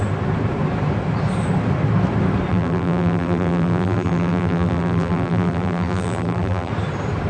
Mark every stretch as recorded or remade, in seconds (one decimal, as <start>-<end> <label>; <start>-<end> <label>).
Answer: 0.0-2.5 recorded; 2.5-6.7 remade; 6.7-7.3 recorded